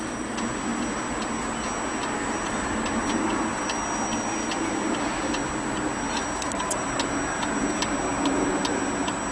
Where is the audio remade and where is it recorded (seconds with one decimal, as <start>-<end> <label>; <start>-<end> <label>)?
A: 0.0-9.3 recorded